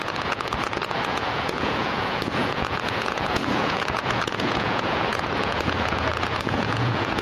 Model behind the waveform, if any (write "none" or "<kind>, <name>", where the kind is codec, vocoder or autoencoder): vocoder, Vocos